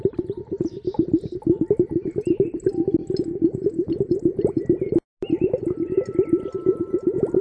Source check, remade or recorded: recorded